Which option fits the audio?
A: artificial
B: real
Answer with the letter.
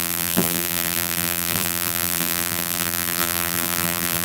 A